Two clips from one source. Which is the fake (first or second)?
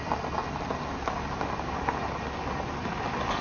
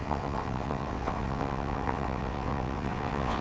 second